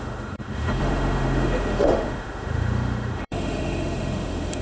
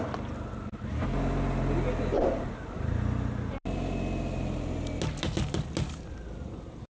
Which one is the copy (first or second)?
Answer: first